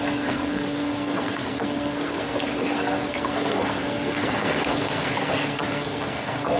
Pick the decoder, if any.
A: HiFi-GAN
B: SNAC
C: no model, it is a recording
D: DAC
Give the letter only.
B